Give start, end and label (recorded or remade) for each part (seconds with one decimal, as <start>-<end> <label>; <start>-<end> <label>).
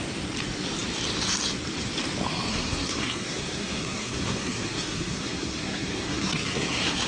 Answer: 0.0-2.5 recorded; 2.5-7.1 remade